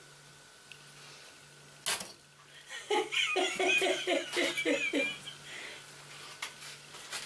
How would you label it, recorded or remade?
recorded